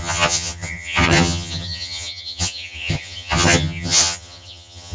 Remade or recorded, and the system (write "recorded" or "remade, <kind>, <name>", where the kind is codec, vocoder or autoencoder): remade, vocoder, HiFi-GAN